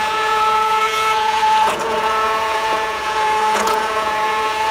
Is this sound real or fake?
fake